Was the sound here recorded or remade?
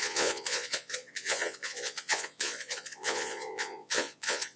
remade